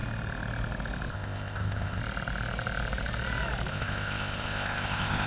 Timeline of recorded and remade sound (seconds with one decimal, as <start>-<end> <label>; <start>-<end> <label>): 0.0-1.1 recorded; 1.1-2.0 remade; 2.0-3.7 recorded; 3.7-5.3 remade